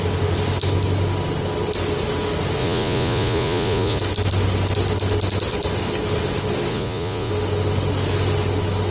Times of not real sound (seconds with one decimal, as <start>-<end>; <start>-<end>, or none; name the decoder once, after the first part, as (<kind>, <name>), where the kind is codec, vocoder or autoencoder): 2.6-4.0 (vocoder, Vocos); 6.7-7.3